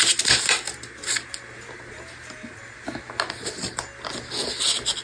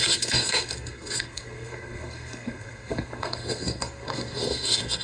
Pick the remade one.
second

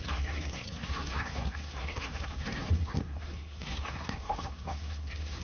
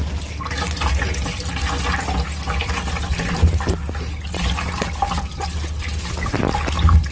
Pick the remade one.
first